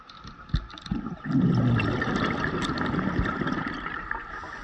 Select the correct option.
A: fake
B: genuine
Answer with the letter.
B